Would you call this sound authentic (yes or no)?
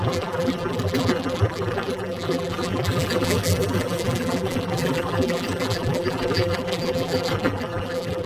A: no